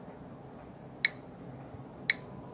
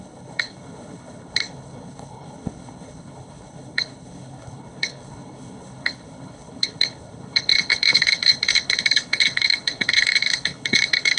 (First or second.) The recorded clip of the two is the first